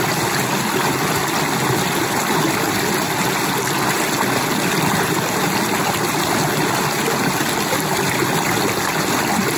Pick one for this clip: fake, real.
real